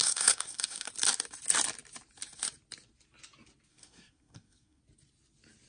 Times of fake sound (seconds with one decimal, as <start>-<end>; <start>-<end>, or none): 0.0-0.9; 3.7-4.8